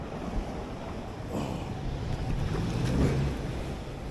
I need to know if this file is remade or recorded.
recorded